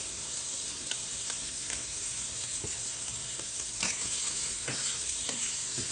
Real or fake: fake